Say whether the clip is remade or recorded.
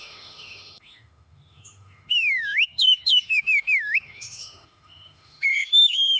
remade